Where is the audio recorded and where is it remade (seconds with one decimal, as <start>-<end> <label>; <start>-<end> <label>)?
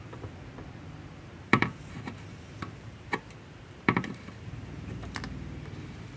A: 0.0-1.5 recorded; 1.5-5.2 remade; 5.2-6.2 recorded